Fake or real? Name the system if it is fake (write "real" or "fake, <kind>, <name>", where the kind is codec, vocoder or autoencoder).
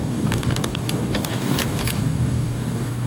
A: fake, codec, DAC